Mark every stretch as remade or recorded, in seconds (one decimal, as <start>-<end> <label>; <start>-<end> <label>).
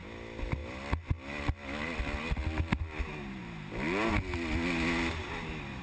0.0-5.8 recorded